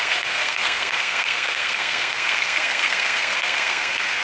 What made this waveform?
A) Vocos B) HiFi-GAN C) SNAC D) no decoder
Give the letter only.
C